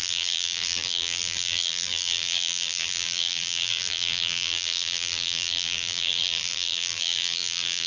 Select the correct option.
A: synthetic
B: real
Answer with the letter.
A